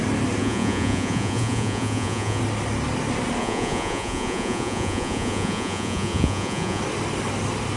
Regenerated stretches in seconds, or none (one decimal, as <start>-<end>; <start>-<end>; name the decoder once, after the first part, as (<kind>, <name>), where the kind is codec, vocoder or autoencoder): 0.4-2.4 (vocoder, Vocos); 3.4-6.8